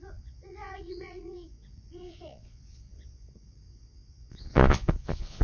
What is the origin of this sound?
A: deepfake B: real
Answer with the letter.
A